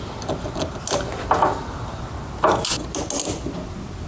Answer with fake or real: real